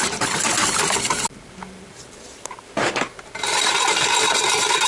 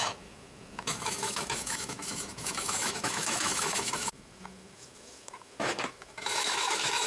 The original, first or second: first